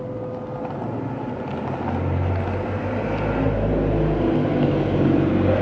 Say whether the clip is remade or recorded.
recorded